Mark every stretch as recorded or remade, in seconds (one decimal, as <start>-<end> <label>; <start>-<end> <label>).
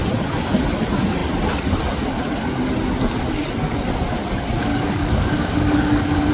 0.0-4.7 recorded; 4.7-6.3 remade